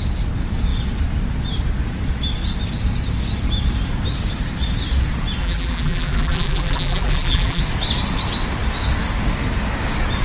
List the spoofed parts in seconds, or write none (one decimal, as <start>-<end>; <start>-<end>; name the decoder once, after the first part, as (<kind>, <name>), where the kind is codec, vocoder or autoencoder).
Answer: 5.4-7.6 (vocoder, BigVGAN v2)